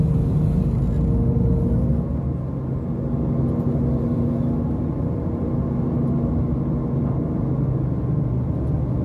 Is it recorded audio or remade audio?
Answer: recorded